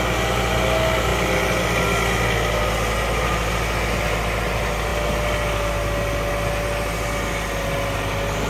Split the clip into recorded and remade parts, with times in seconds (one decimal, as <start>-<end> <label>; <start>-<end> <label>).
0.0-8.5 recorded